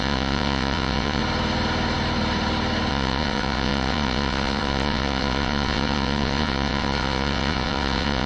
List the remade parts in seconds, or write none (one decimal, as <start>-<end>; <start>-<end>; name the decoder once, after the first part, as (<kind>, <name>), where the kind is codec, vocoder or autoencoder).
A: 0.0-1.2 (vocoder, WaveNeXt); 2.9-8.3

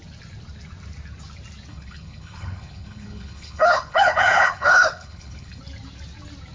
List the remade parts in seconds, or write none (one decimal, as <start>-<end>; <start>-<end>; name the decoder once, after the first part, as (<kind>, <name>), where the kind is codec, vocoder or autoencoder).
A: 1.7-5.6 (codec, HILCodec)

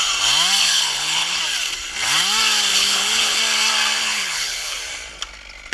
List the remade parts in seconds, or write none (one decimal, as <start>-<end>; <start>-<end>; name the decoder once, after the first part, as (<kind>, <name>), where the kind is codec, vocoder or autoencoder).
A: 0.6-1.4 (codec, HILCodec); 2.7-3.4; 4.0-4.8

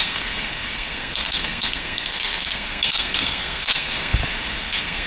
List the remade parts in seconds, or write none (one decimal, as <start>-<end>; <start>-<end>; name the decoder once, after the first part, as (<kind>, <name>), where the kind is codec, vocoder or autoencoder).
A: 0.0-5.1 (codec, SNAC)

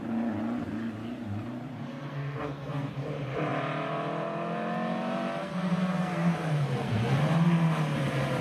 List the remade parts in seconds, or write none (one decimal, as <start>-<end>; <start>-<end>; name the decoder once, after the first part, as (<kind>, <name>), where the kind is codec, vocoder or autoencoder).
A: 1.9-2.9 (codec, SNAC); 5.4-7.2

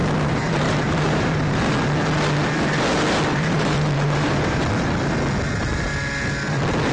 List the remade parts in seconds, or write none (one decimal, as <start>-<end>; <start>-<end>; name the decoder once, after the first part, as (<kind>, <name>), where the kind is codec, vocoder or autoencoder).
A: 0.0-1.7 (vocoder, BigVGAN v2); 3.3-4.6